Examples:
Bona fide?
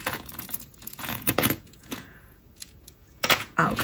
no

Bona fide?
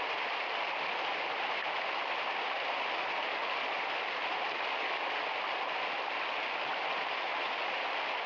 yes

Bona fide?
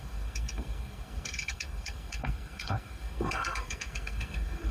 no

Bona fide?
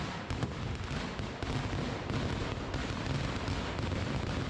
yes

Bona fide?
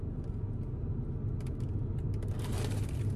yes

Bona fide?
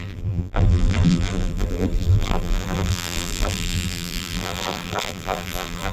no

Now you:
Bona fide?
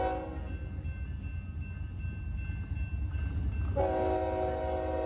yes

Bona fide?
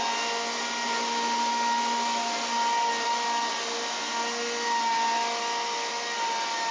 yes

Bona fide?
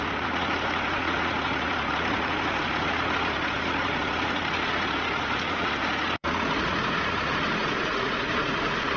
no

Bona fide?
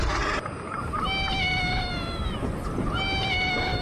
yes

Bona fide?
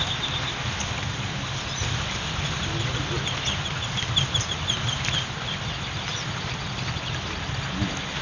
yes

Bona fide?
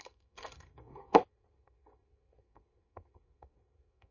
no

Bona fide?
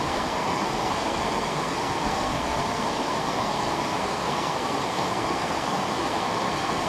no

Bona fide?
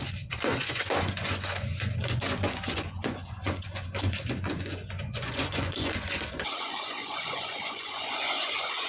no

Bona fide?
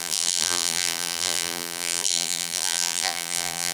no